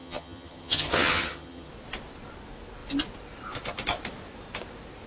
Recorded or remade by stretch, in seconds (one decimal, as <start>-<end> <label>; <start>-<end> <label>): 0.0-1.7 remade; 1.7-5.1 recorded